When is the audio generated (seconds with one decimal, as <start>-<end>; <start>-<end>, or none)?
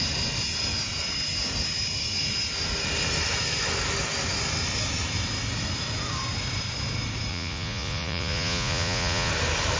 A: 7.3-9.3